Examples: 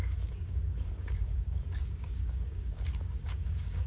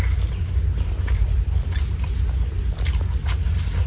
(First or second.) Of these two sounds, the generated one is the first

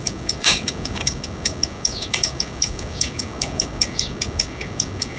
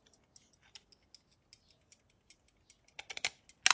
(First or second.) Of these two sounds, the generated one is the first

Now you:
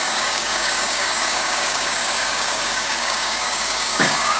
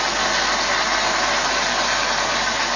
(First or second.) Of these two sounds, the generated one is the first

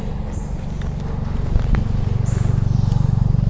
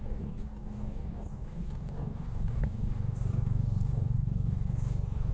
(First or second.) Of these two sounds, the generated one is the second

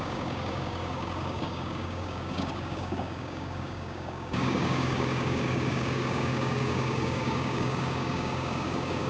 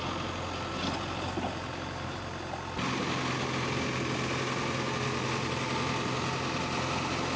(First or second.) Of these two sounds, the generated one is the first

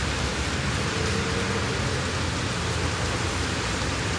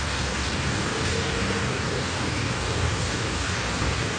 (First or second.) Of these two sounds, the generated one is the second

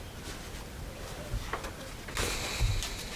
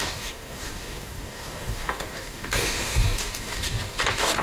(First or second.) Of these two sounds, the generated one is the second